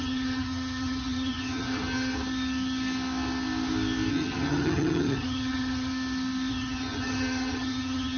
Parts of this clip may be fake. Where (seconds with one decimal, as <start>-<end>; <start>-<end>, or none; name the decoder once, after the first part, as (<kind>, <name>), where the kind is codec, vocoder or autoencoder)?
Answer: 0.0-2.1 (vocoder, HiFi-GAN); 4.1-5.9; 6.5-8.2